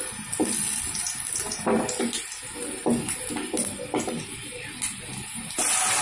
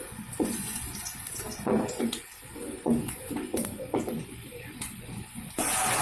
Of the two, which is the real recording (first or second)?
first